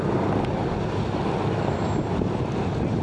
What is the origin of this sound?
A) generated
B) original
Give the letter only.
B